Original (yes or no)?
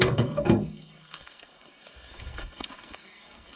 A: no